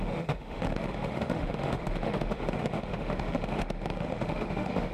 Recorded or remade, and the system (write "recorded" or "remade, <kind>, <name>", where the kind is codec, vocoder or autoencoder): remade, autoencoder, DAC-VAE